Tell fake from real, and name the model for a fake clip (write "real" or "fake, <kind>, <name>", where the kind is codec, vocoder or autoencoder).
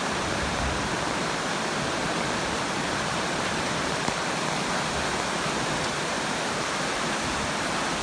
real